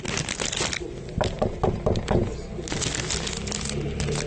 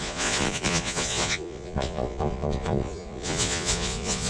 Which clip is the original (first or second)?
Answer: first